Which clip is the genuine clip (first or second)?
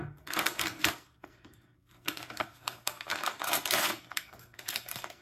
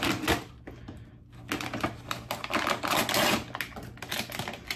second